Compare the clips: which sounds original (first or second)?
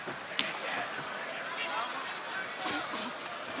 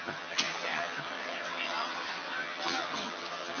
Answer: first